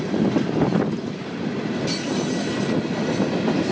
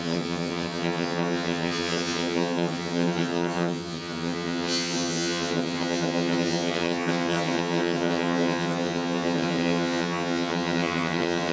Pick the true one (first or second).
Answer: first